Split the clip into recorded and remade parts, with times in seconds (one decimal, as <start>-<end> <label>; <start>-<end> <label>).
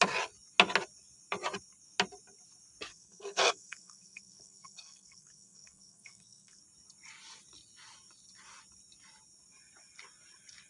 0.0-2.9 recorded; 2.9-6.6 remade; 6.6-10.7 recorded